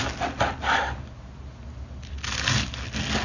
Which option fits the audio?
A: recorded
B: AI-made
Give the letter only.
A